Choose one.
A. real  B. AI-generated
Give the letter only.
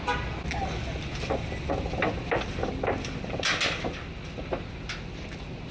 A